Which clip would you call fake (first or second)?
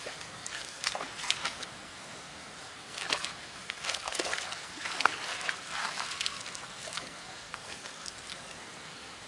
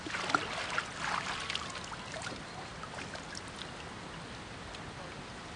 first